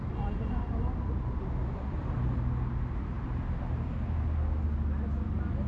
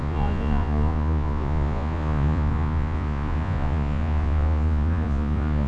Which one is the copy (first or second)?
second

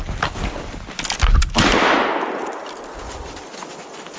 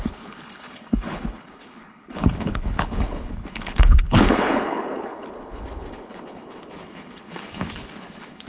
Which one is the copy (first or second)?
second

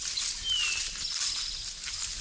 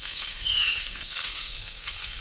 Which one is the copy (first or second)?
second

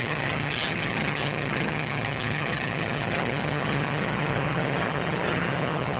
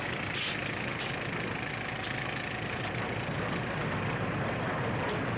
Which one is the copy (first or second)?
first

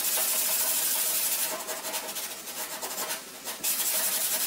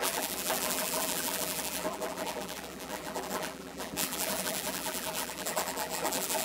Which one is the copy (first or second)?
second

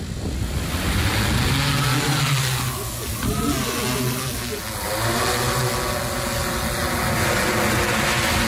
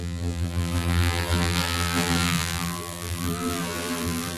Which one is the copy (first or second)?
second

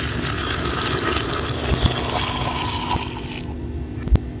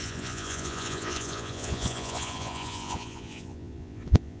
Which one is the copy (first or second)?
second